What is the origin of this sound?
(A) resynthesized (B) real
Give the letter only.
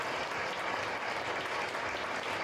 B